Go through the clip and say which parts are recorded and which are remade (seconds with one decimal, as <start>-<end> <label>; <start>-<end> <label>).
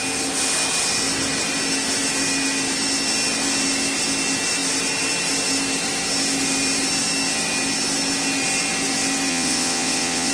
0.0-9.3 recorded; 9.3-10.3 remade